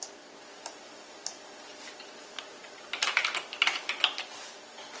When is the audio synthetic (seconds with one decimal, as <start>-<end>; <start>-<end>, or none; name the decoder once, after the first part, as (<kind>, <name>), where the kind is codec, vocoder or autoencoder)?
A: none